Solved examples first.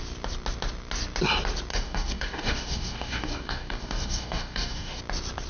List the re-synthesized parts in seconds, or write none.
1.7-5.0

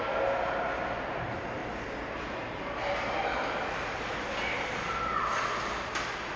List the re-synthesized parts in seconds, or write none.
none

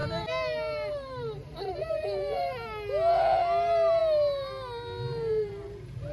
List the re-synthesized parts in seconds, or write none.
none

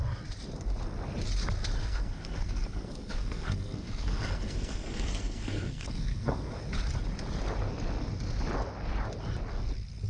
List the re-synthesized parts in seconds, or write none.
1.8-6.6

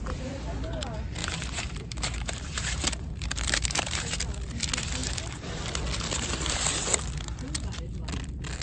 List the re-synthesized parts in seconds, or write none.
1.2-4.1

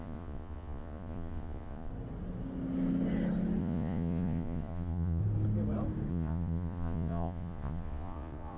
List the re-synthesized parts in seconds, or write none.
0.0-1.9; 3.6-5.2; 6.1-8.6

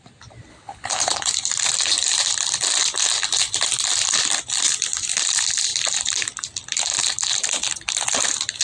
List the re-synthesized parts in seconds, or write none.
0.5-1.3

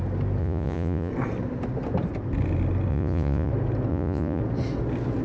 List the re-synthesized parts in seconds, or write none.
0.4-1.1; 2.9-3.5; 3.9-4.4